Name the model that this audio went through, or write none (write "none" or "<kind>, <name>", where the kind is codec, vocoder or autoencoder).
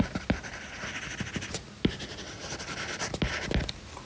none